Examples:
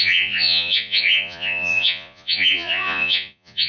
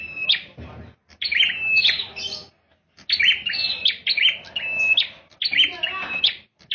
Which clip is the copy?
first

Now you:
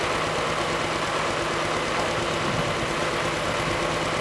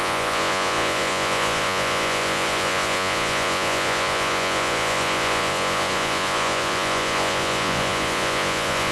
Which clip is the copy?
second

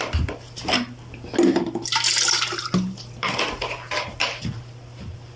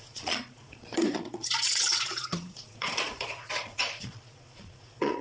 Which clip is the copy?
second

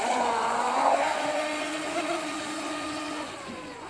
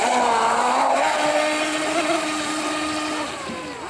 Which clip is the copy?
first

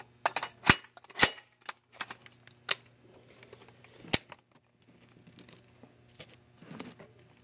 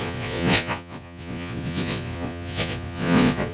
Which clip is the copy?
second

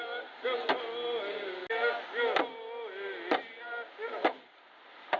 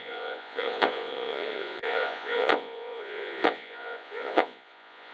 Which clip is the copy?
second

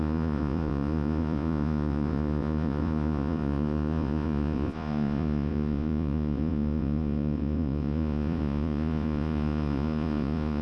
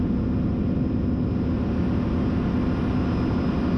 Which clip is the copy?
first